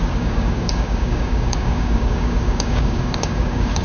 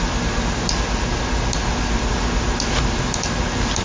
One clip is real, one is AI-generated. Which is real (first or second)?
second